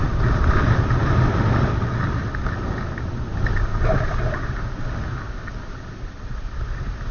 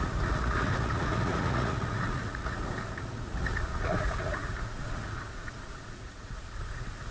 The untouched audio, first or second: first